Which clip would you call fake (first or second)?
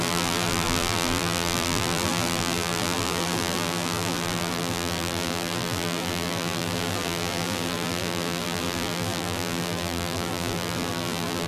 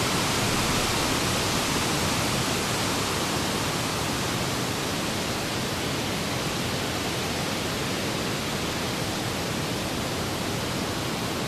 first